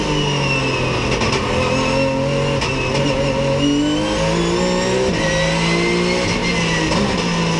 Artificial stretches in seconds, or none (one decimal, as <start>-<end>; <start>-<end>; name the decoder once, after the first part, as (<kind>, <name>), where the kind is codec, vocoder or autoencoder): none